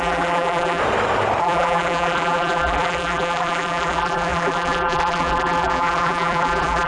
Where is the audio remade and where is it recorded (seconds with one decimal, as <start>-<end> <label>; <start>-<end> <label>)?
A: 0.0-0.8 remade; 0.8-1.4 recorded; 1.4-6.9 remade